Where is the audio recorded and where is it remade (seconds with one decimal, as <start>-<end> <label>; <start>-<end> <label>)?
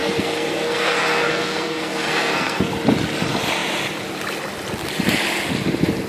0.0-2.7 remade; 2.7-6.1 recorded